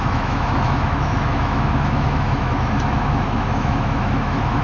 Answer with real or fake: fake